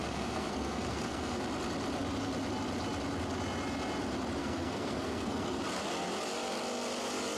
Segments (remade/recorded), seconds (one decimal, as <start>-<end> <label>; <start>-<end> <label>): 0.0-1.4 remade; 1.4-4.4 recorded; 4.4-5.6 remade; 5.6-7.4 recorded